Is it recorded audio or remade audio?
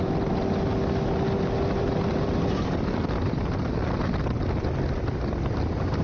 recorded